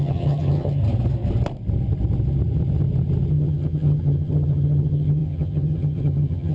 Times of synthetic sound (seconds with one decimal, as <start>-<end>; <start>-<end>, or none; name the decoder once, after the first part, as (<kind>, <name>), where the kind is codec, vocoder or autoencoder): 0.0-0.8 (vocoder, HiFi-GAN); 3.3-6.5